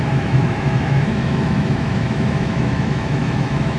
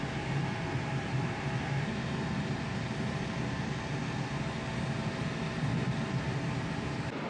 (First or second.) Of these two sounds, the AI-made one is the first